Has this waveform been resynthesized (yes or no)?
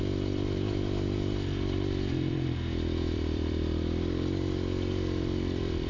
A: yes